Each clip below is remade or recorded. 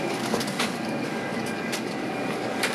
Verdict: remade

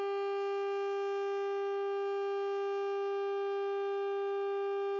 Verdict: recorded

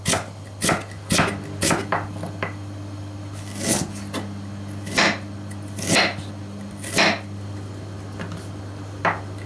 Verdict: recorded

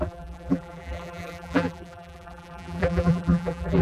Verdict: remade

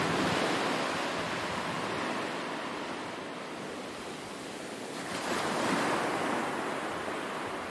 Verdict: recorded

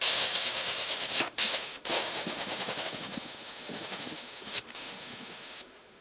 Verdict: remade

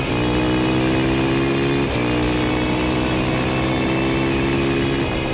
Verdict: recorded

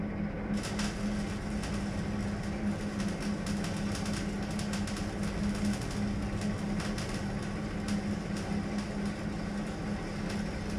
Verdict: recorded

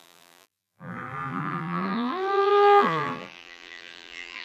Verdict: remade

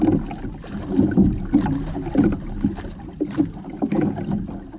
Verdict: recorded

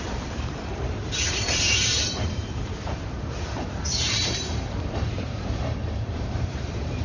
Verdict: remade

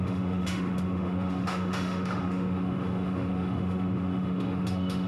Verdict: remade